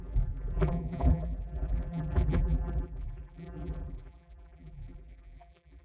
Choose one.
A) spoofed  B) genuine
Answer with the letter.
A